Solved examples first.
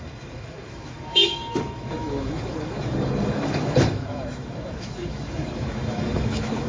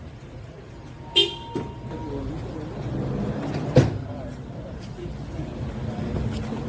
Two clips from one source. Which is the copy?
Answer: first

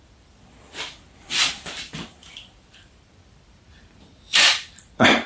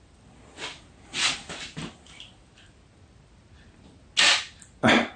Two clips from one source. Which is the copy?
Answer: first